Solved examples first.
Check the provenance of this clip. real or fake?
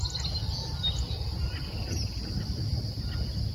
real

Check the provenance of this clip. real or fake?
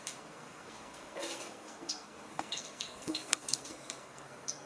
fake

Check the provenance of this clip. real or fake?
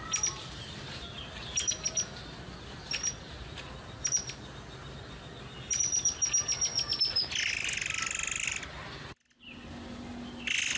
real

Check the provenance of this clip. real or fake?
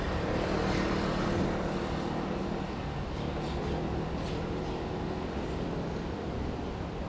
real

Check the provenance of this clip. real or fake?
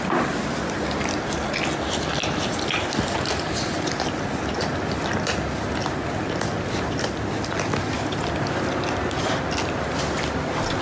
real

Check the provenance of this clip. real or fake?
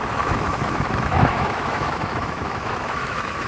fake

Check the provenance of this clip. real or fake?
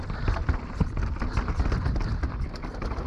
real